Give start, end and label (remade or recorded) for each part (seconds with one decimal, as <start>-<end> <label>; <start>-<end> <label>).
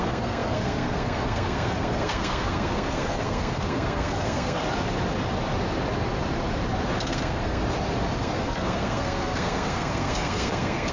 0.0-4.6 remade; 4.6-7.0 recorded; 7.0-7.6 remade; 7.6-8.2 recorded; 8.2-10.9 remade